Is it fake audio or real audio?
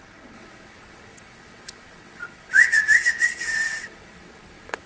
fake